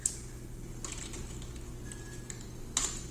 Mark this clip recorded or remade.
recorded